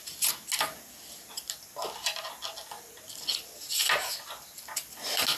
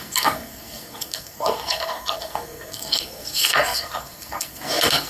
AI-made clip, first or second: second